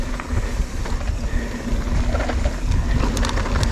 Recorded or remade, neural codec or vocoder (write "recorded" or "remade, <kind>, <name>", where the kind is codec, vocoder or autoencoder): recorded